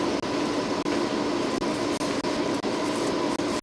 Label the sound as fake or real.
real